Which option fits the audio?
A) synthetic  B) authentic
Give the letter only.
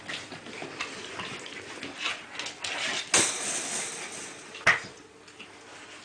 B